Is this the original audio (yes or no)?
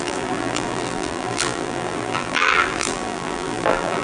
no